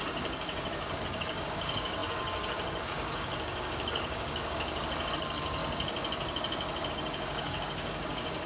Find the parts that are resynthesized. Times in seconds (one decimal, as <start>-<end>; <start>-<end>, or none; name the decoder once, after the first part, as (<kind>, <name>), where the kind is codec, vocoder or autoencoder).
0.0-5.6 (codec, DAC); 6.9-8.5